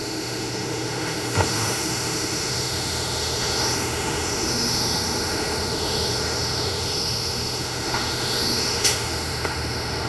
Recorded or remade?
remade